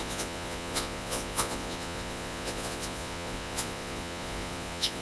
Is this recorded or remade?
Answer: remade